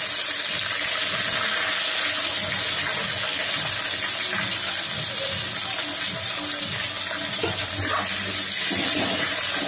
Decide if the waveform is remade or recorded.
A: recorded